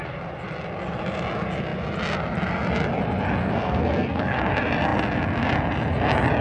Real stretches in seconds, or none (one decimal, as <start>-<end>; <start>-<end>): 0.0-3.4; 4.4-6.4